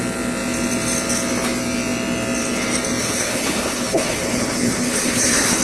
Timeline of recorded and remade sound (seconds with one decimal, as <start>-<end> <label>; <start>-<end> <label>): 0.0-3.0 recorded; 3.0-5.6 remade